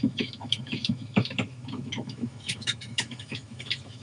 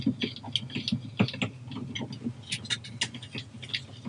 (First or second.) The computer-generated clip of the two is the first